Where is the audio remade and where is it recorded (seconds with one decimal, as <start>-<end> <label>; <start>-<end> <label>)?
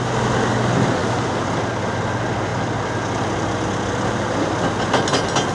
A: 0.0-5.5 recorded